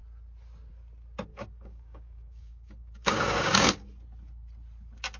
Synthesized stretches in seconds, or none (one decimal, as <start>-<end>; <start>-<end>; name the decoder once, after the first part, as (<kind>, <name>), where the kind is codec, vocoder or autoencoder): 1.3-3.7 (codec, DAC)